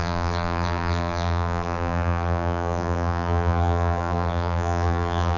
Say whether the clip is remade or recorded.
remade